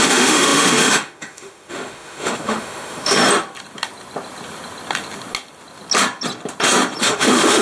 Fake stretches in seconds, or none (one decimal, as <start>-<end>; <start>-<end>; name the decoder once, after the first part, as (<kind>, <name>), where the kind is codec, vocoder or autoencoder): 0.0-3.2 (autoencoder, DAC-VAE); 7.0-7.6